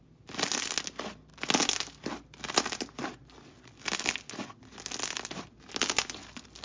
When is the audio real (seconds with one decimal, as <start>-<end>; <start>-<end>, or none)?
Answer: 0.0-6.6